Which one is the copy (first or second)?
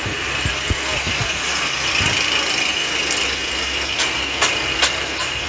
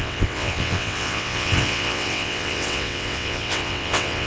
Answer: second